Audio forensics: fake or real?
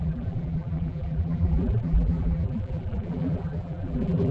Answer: fake